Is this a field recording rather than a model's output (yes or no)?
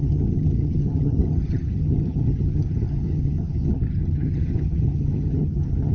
no